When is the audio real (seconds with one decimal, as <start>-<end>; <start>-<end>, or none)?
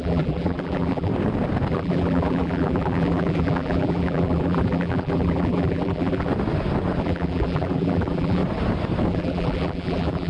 1.1-1.7; 6.3-7.0; 8.4-9.1